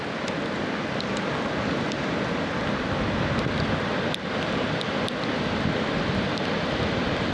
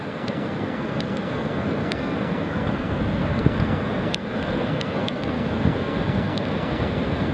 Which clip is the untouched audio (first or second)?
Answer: first